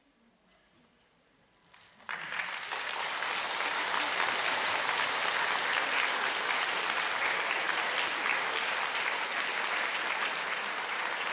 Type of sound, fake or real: real